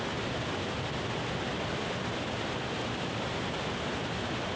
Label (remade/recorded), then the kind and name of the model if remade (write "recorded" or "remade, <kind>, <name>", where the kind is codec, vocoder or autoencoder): recorded